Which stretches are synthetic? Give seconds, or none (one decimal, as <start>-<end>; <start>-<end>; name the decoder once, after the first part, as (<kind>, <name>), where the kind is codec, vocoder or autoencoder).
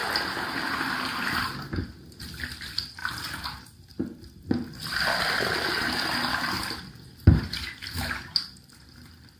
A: 2.2-3.0 (vocoder, BigVGAN v2); 5.8-9.4